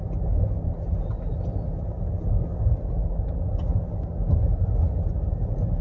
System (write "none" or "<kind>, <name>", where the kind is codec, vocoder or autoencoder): none